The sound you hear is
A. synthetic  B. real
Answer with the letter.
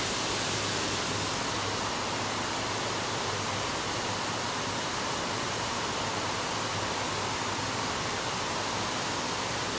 B